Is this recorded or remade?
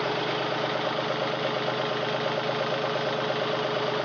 recorded